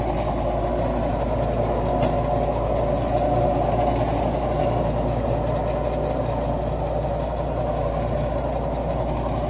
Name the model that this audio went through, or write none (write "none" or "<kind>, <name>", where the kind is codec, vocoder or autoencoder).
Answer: none